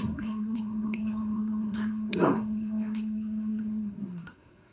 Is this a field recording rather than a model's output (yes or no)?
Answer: no